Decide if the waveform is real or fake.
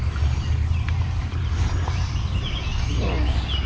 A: real